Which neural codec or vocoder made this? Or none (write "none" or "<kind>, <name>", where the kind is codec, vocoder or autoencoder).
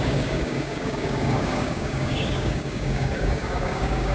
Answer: codec, DAC